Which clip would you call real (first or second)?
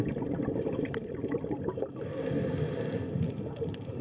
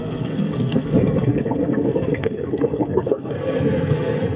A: first